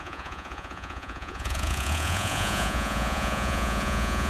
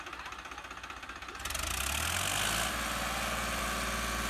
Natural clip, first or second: second